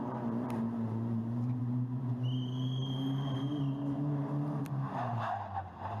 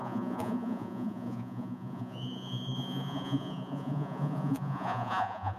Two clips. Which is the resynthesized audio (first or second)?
second